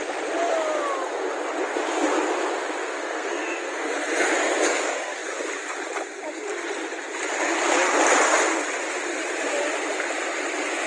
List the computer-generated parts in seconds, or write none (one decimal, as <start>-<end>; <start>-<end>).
2.8-3.9